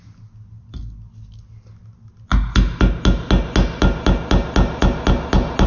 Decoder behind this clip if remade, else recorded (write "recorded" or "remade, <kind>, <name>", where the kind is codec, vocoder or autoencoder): recorded